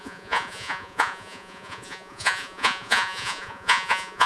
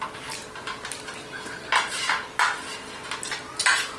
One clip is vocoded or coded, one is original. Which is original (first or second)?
second